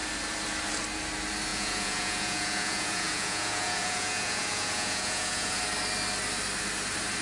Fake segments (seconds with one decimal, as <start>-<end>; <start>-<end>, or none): 1.5-5.6